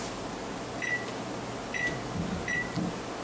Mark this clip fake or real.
real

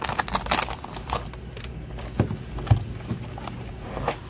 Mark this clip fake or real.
real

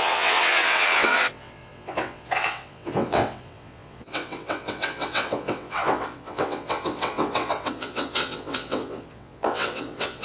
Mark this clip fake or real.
fake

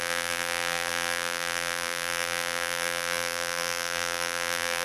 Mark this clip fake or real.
fake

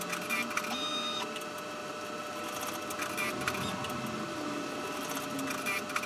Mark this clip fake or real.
real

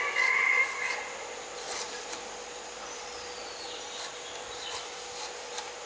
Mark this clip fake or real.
real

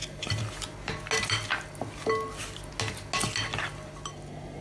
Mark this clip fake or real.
real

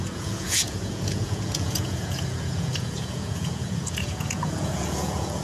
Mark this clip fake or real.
fake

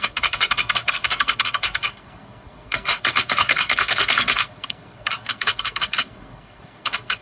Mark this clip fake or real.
fake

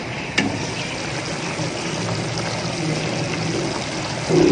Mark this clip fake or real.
real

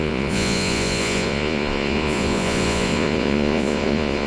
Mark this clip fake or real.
fake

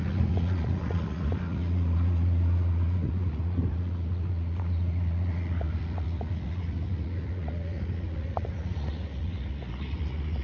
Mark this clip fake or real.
fake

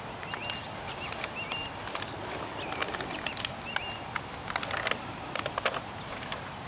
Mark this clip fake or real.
real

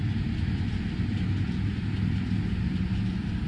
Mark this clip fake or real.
real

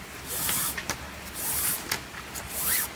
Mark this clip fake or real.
real